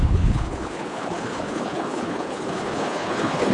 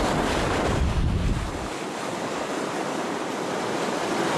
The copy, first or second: first